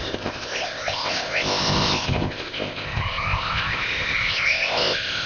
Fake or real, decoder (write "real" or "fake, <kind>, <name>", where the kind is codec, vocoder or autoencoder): fake, codec, ZipCodec